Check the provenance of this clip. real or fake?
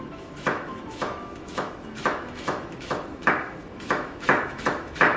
fake